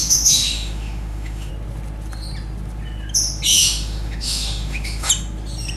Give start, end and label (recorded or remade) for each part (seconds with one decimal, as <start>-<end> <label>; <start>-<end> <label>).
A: 0.0-1.5 remade; 1.5-3.5 recorded; 3.5-5.1 remade; 5.1-5.8 recorded